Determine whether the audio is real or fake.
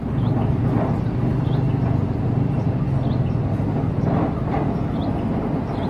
real